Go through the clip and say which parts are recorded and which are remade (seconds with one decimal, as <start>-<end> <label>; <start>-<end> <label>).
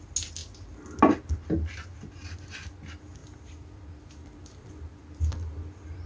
0.0-3.2 recorded; 3.2-6.1 remade